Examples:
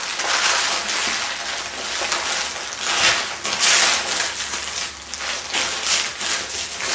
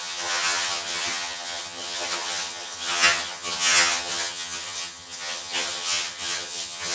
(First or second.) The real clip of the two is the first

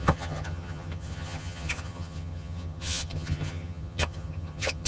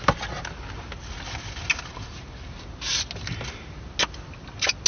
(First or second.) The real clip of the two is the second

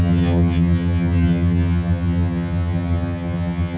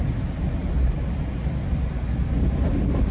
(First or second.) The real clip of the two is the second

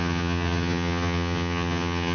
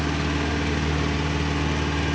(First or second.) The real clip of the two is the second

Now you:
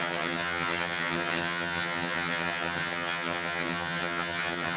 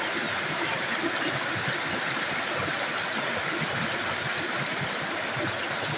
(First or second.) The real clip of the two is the second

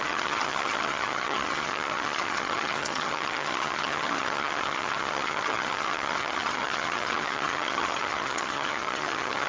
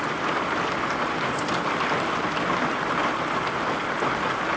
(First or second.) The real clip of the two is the second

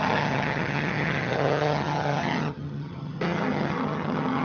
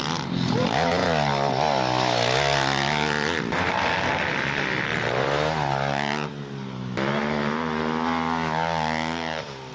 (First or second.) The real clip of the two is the second